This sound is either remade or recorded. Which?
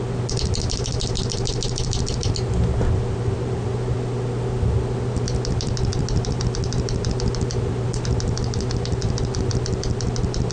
recorded